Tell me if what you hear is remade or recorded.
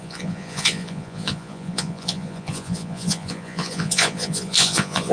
remade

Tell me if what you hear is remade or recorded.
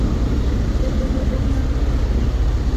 recorded